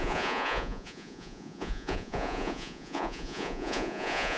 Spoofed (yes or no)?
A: yes